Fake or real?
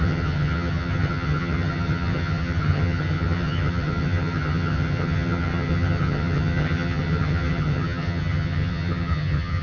fake